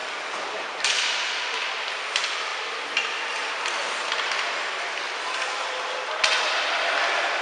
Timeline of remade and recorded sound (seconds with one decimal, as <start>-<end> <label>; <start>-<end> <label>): 0.0-2.5 remade; 2.5-6.4 recorded; 6.4-7.4 remade